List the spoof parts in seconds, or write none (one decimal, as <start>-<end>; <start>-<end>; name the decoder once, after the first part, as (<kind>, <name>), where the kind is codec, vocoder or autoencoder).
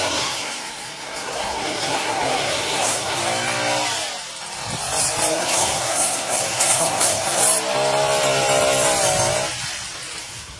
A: 0.0-3.2 (codec, SNAC); 5.3-7.4; 10.2-10.6